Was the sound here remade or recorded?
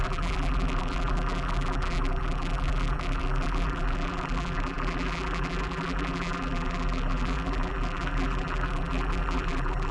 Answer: remade